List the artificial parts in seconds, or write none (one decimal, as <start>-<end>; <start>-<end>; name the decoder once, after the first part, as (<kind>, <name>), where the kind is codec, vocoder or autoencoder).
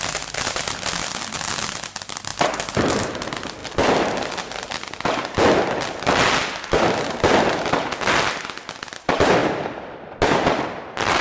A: 3.6-5.4 (vocoder, BigVGAN v2)